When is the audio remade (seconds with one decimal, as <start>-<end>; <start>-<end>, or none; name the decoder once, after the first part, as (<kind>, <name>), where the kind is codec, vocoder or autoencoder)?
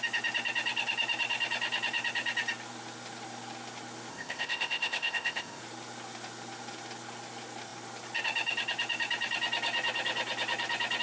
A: 4.1-5.6 (codec, ZipCodec)